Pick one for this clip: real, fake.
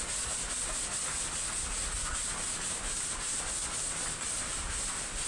real